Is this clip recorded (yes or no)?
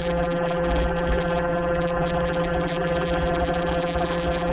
no